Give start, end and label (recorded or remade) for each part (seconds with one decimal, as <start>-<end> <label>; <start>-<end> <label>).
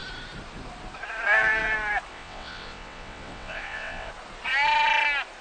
0.0-2.1 recorded; 2.1-4.1 remade; 4.1-5.4 recorded